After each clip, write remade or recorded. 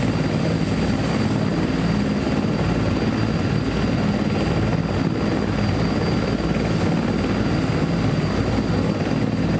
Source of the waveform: recorded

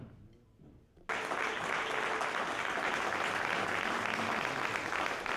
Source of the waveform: recorded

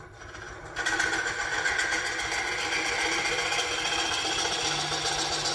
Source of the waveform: recorded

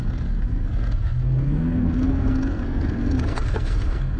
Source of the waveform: remade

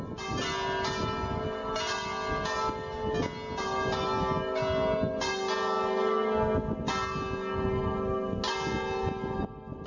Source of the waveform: recorded